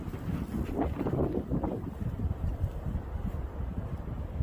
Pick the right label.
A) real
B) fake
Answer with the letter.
A